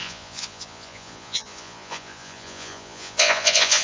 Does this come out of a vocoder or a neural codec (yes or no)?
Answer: yes